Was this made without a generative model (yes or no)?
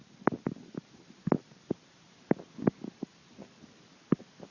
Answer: yes